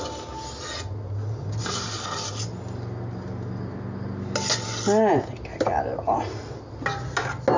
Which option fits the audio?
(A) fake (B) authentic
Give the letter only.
B